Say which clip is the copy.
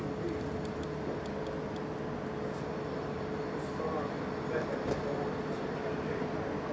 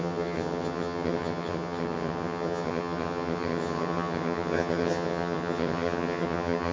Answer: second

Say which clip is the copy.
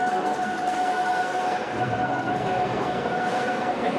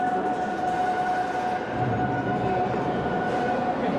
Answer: first